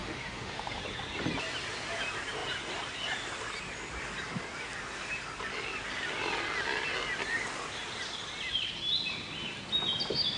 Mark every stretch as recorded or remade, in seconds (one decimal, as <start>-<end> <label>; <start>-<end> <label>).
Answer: 0.0-0.8 remade; 0.8-10.4 recorded